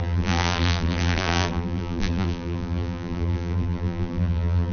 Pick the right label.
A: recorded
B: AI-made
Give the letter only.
B